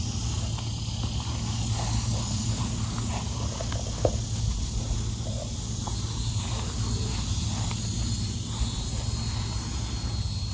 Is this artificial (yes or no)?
no